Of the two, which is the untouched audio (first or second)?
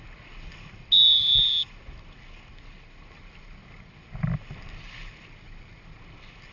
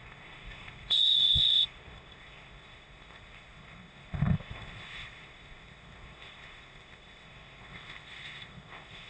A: first